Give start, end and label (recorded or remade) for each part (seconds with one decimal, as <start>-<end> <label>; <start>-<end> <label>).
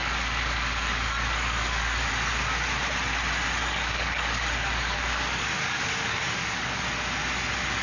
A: 0.0-2.1 remade; 2.1-3.6 recorded; 3.6-6.8 remade; 6.8-7.8 recorded